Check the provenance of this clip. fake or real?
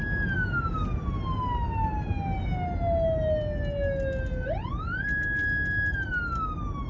real